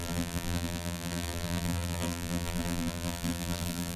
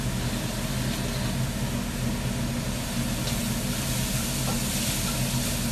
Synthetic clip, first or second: first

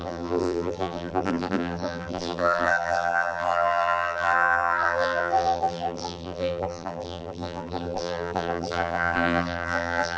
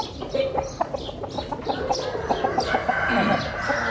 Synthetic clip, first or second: first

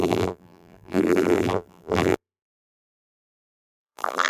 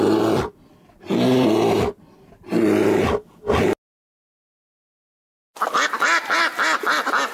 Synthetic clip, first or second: first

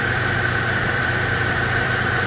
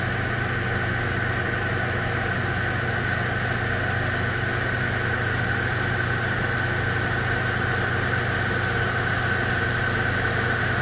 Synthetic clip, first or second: first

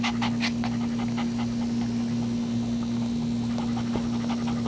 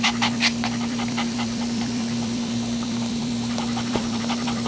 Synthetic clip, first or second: second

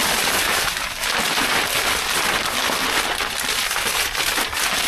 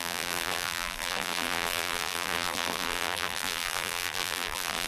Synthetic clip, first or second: second